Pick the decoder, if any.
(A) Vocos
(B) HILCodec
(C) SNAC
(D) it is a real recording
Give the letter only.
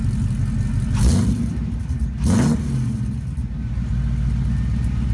D